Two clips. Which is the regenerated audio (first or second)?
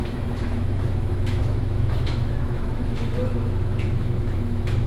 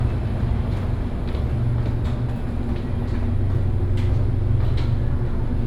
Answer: first